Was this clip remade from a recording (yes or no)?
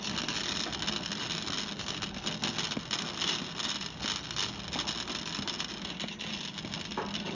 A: no